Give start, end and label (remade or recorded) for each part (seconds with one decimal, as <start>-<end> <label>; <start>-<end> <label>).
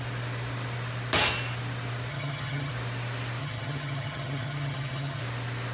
0.0-2.1 recorded; 2.1-2.7 remade; 2.7-3.4 recorded; 3.4-5.2 remade; 5.2-5.7 recorded